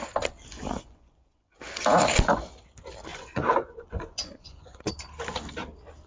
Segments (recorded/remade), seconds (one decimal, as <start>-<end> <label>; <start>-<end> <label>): 0.0-0.5 recorded; 0.5-1.5 remade; 1.5-3.1 recorded; 3.1-4.9 remade; 4.9-6.1 recorded